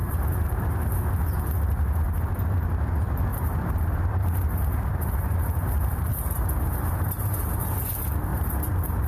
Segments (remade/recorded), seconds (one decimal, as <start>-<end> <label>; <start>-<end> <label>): 0.0-0.7 remade; 0.7-3.3 recorded; 3.3-7.7 remade; 7.7-8.3 recorded; 8.3-9.1 remade